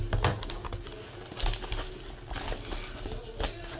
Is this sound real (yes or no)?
yes